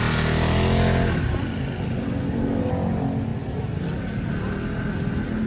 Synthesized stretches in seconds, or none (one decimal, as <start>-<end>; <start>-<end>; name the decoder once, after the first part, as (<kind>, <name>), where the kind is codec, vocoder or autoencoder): 2.2-2.7 (codec, SNAC)

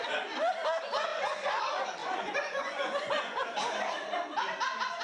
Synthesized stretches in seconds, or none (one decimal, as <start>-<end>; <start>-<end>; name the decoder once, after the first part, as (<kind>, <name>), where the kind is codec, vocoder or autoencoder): 1.1-1.6 (vocoder, Vocos); 2.0-3.4

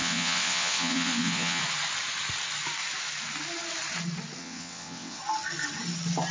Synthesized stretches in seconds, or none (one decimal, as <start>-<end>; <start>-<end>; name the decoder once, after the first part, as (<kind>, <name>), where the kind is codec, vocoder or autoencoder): 0.0-1.6 (vocoder, WaveNeXt); 4.4-5.2

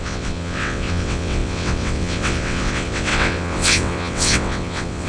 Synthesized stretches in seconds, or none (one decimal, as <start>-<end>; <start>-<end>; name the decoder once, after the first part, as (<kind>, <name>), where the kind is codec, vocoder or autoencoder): 0.0-5.1 (vocoder, WaveNeXt)

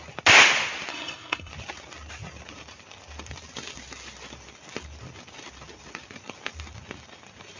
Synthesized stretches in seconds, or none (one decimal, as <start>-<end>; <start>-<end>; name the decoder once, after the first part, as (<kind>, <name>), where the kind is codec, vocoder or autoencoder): 0.9-1.5 (codec, SNAC)